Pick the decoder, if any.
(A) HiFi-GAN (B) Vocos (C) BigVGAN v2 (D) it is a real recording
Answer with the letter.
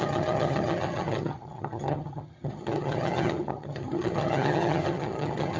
A